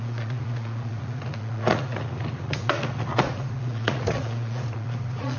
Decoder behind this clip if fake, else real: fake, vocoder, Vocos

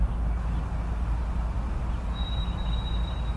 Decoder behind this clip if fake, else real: real